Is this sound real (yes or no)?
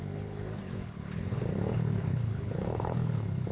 no